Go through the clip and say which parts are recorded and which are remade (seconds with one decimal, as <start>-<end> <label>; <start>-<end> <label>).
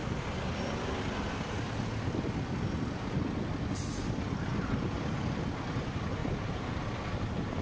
0.0-7.6 recorded